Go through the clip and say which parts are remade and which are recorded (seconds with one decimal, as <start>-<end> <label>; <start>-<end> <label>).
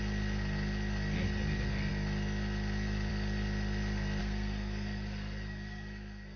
0.0-4.2 recorded; 4.2-6.4 remade